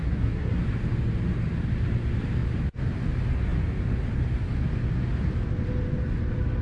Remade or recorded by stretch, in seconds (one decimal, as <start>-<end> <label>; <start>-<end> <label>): 0.0-0.6 remade; 0.6-6.6 recorded